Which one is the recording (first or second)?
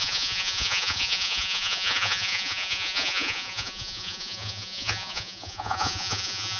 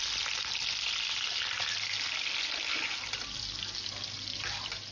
second